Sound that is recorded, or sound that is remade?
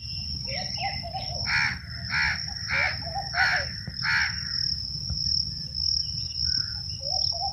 recorded